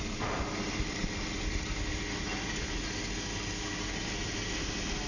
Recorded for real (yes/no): yes